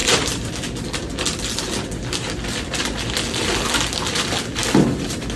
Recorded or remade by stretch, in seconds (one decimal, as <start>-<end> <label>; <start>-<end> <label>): 0.0-0.5 remade; 0.5-5.4 recorded